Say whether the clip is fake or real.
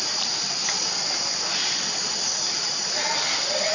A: real